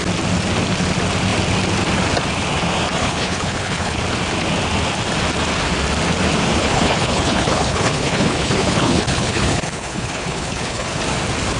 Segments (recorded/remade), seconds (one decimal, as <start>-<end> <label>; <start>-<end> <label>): 0.0-3.0 recorded; 3.0-4.0 remade; 4.0-6.6 recorded; 6.6-11.0 remade; 11.0-11.6 recorded